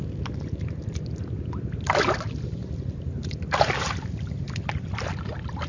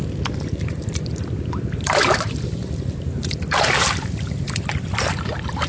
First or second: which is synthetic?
second